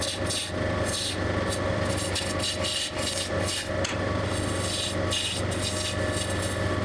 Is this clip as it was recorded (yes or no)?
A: yes